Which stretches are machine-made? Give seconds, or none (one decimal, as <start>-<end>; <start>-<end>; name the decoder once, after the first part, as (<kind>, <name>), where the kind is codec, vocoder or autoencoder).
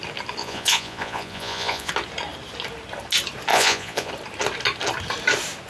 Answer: 0.4-1.9 (vocoder, Vocos); 3.5-4.1